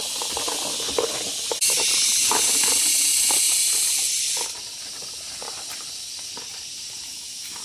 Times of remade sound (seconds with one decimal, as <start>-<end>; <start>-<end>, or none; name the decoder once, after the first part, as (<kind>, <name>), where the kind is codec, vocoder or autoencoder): 7.1-7.6 (autoencoder, DAC-VAE)